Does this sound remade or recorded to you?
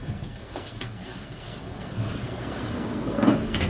remade